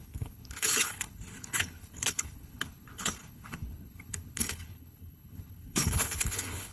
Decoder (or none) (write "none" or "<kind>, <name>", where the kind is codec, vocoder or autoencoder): codec, HILCodec